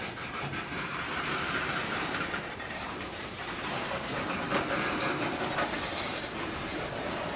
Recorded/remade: remade